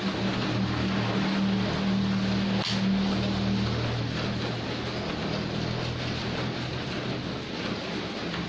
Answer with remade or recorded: recorded